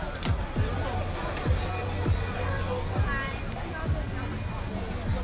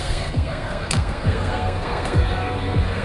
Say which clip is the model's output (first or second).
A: second